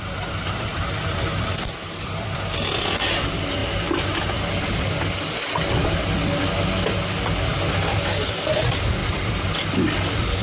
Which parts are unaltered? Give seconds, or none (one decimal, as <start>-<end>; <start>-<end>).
0.0-3.6; 4.3-9.0; 9.7-10.4